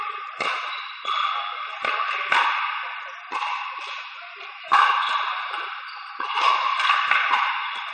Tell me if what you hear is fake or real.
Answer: real